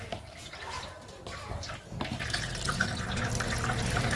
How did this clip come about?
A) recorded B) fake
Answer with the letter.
A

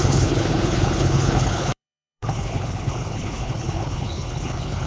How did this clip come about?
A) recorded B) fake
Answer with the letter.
B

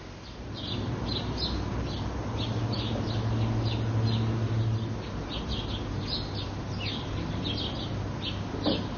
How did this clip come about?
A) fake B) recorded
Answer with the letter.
B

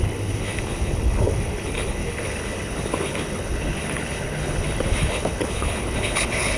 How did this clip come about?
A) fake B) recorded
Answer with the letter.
A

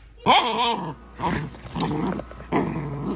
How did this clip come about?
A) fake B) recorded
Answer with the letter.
B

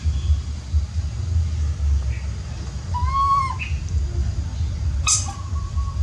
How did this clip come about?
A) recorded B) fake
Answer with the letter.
A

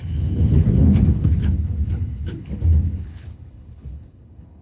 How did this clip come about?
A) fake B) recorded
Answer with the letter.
A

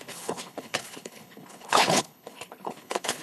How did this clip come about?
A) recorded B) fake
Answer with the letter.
B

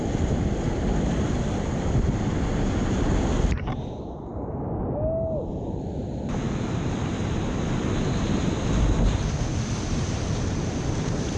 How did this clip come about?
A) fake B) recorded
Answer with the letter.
B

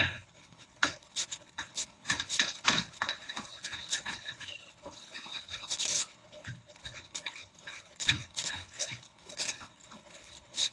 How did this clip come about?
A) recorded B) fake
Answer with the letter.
B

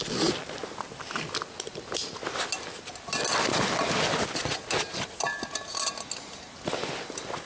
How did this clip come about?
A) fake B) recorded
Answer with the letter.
B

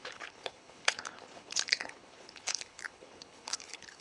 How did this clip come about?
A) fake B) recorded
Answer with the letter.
A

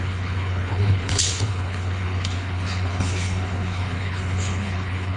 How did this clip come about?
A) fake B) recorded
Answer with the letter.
A